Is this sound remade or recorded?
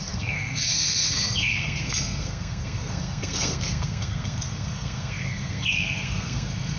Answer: remade